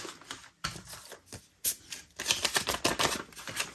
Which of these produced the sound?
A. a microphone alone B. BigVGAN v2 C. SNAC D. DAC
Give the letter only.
A